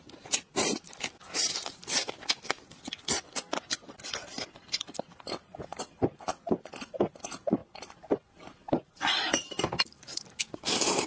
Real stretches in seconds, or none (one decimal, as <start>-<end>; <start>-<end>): 7.6-8.3